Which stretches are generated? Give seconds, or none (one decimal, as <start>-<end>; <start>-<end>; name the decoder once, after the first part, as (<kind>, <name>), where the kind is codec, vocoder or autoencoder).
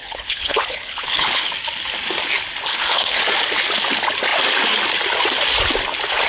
0.0-1.5 (codec, HILCodec); 2.7-3.2